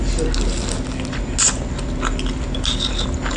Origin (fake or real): real